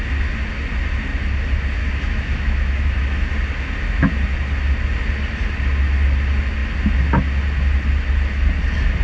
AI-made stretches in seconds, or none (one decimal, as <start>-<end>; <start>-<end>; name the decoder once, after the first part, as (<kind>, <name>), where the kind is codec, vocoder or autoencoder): 1.8-3.3 (autoencoder, DAC-VAE)